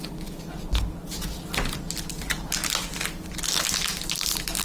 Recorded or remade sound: recorded